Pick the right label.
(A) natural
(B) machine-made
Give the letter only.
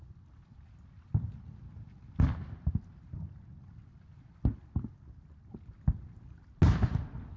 A